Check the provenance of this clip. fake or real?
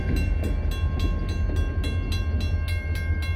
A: real